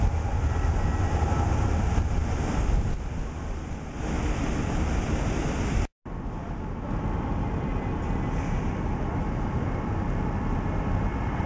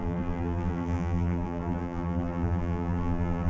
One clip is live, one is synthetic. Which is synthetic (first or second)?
second